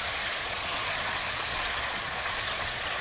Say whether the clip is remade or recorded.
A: remade